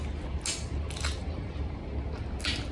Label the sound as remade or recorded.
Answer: recorded